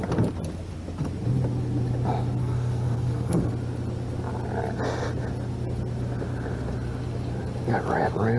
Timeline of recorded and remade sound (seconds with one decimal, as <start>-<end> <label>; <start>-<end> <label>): 0.0-2.4 recorded; 2.4-3.5 remade; 3.5-8.4 recorded